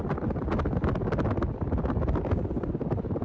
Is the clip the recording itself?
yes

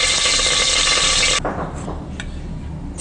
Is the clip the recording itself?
yes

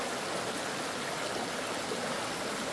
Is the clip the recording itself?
yes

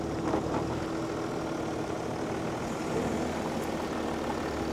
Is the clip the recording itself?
yes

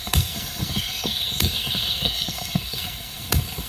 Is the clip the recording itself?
no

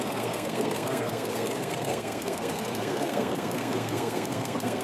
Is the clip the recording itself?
no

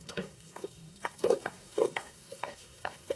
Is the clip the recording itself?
no